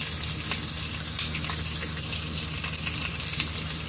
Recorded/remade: recorded